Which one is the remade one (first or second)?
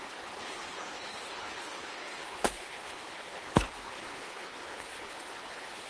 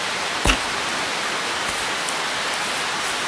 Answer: first